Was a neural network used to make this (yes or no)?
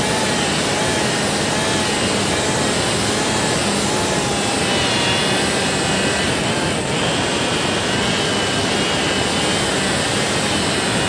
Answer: no